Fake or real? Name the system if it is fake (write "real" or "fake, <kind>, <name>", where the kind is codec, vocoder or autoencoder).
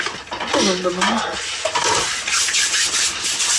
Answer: real